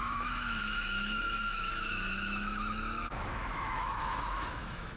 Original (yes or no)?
no